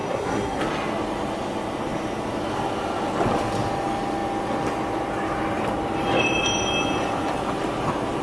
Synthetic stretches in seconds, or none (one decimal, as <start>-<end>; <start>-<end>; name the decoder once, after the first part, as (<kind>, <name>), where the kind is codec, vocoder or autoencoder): 0.0-0.6 (codec, SNAC)